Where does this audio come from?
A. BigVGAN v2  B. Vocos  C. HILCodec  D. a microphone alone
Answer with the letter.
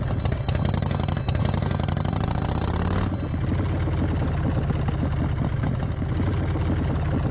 D